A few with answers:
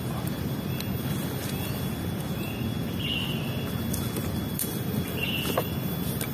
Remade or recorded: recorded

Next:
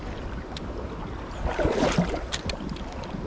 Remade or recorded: recorded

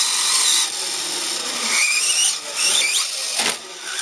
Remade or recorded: recorded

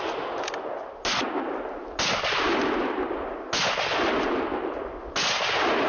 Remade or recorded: recorded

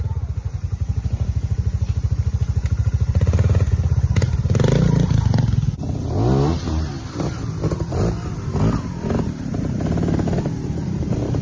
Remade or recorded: recorded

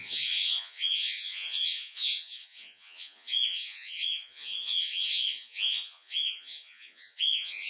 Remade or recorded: remade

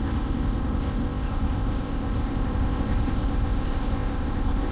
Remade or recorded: remade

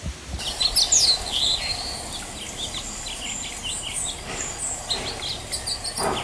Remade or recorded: recorded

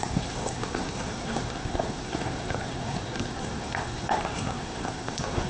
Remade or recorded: remade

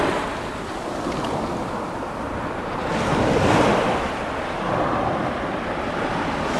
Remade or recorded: recorded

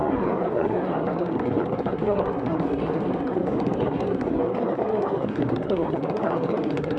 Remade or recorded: remade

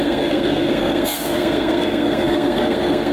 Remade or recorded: remade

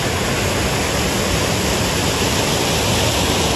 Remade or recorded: recorded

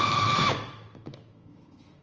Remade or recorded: remade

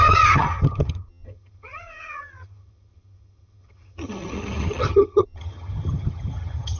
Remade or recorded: remade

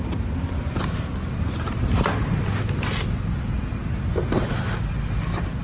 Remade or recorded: recorded